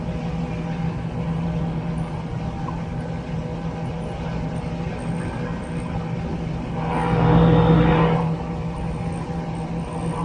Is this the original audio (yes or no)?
yes